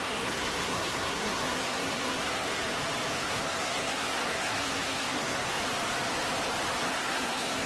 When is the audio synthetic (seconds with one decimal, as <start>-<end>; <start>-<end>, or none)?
0.0-2.6; 3.2-5.6; 6.8-7.7